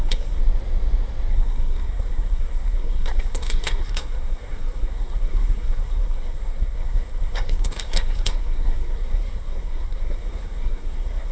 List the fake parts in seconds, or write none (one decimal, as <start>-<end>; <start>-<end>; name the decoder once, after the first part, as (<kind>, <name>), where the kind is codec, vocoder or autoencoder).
0.0-0.4 (codec, SNAC); 1.3-11.3